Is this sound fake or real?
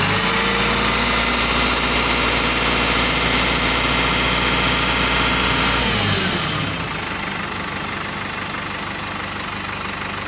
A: real